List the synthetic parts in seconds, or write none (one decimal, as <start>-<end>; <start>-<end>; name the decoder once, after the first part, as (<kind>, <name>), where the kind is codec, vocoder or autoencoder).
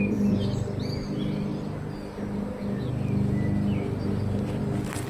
none